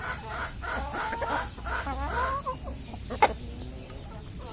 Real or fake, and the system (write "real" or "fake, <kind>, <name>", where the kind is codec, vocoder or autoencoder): real